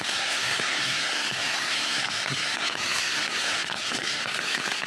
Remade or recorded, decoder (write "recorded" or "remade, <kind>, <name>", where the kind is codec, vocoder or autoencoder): remade, codec, SNAC